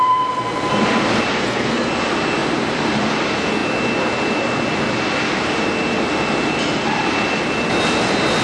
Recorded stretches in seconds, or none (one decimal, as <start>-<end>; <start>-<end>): 0.0-1.3; 1.9-8.4